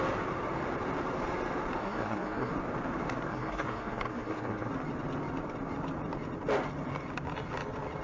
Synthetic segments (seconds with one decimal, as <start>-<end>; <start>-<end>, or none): 1.8-2.5; 3.3-4.7